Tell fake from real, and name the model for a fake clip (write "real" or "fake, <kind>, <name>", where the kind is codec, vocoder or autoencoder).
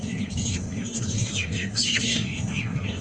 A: fake, codec, SNAC